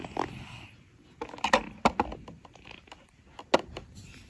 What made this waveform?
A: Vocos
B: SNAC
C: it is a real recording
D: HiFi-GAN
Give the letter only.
C